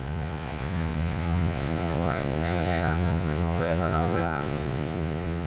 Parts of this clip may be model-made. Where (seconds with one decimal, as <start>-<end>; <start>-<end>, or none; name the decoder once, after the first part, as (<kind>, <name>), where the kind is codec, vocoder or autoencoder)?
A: 0.0-5.5 (vocoder, Vocos)